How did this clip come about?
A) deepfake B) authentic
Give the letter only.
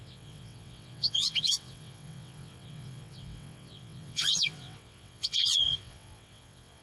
A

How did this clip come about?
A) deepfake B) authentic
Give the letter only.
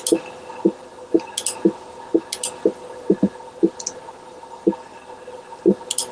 B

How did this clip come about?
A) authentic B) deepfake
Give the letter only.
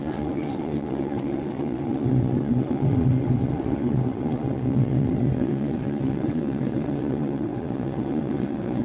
B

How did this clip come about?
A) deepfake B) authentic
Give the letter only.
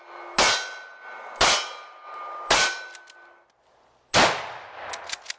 B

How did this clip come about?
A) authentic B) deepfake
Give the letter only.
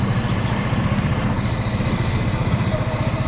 A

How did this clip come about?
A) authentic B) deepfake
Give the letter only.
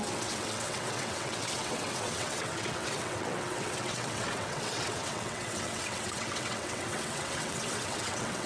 B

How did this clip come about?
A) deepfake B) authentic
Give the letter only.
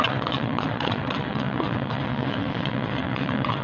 A